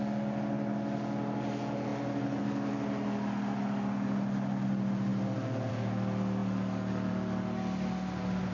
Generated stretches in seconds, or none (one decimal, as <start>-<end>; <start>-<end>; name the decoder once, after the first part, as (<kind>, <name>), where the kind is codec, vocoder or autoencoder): none

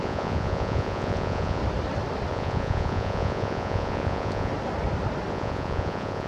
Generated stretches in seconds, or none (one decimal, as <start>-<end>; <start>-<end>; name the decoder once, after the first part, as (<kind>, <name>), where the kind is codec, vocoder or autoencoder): 0.0-1.6 (vocoder, Vocos); 2.3-4.5; 5.3-6.3